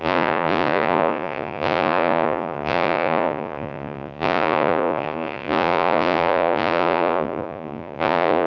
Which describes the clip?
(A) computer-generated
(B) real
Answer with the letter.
A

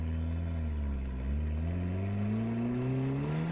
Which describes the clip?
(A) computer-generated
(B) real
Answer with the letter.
B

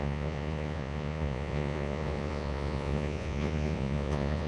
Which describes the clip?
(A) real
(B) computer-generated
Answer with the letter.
B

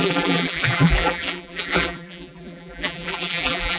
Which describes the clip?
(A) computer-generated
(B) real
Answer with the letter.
A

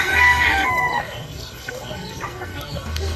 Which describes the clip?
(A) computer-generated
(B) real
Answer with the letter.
A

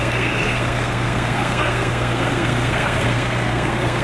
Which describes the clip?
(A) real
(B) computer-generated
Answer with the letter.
B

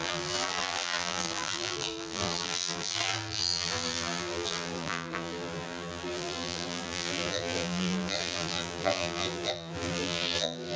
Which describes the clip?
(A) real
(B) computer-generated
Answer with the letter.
B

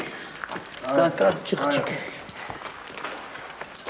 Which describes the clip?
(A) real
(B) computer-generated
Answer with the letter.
A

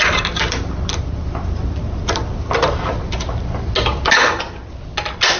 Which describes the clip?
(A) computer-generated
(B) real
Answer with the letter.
B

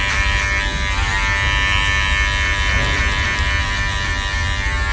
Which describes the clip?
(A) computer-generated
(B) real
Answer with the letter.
B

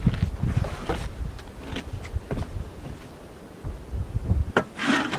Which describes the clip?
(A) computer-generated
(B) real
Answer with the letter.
B